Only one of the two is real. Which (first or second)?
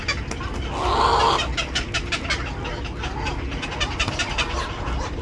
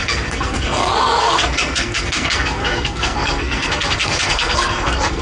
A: first